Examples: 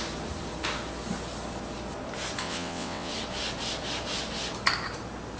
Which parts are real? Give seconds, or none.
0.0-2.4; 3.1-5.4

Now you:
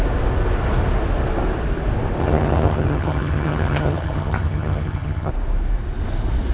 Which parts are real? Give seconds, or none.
0.0-2.2; 5.3-6.5

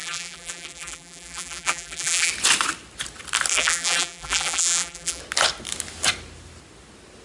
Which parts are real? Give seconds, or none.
2.3-3.5; 5.2-7.2

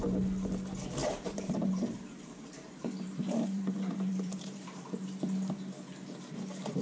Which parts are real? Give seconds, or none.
0.0-1.0; 4.8-6.8

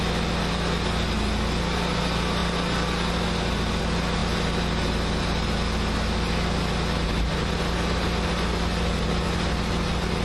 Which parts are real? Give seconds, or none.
0.0-10.2

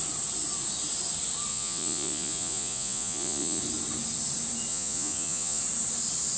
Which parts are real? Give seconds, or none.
0.0-1.5; 3.6-4.7; 5.6-6.4

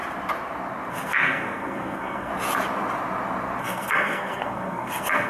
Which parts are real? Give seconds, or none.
0.0-0.9; 2.3-3.6

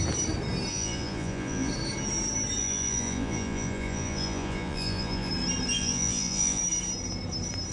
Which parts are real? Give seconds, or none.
0.0-0.7; 1.7-2.6; 5.3-5.7; 6.6-7.7